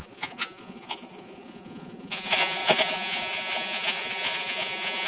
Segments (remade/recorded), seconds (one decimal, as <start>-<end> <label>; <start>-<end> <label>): 0.0-5.1 remade